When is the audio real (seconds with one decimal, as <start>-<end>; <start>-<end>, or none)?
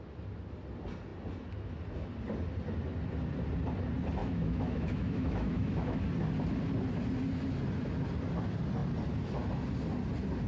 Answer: 0.0-4.2; 6.0-10.5